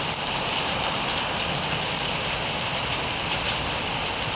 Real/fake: real